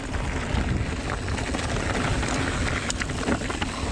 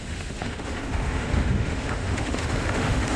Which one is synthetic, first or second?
second